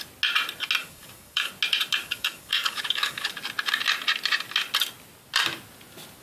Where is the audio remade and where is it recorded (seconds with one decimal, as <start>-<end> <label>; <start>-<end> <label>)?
0.0-0.8 recorded; 0.8-1.5 remade; 1.5-2.0 recorded; 2.0-3.3 remade; 3.3-6.2 recorded